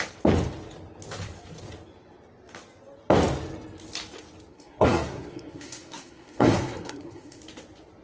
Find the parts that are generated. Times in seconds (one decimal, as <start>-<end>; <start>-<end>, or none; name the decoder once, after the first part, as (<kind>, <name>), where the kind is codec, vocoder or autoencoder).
4.5-7.4 (codec, SNAC)